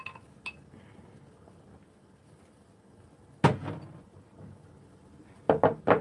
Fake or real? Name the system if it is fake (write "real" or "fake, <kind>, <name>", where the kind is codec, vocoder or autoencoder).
real